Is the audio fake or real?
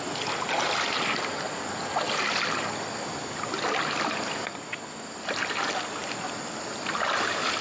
real